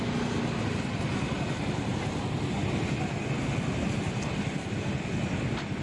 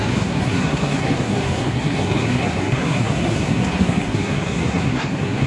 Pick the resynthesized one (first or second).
second